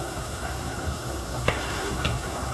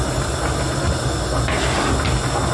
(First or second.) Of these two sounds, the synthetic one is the first